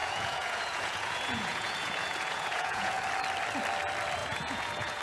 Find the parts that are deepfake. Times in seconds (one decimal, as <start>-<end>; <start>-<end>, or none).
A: 0.0-3.0; 4.2-5.0